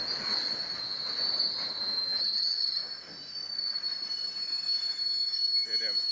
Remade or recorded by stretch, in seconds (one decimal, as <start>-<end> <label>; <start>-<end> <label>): 0.0-2.2 recorded; 2.2-2.8 remade; 2.8-6.1 recorded